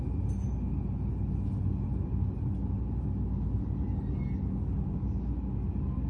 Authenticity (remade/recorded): recorded